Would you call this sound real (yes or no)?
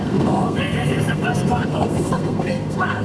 no